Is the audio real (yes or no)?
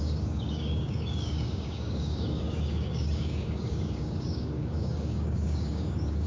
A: no